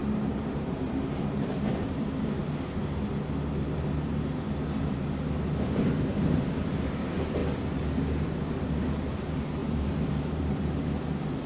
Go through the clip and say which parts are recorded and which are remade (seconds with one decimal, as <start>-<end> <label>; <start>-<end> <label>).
0.0-2.4 remade; 2.4-6.6 recorded; 6.6-7.4 remade; 7.4-8.2 recorded; 8.2-11.5 remade